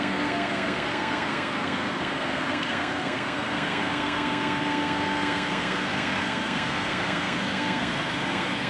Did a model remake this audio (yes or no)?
yes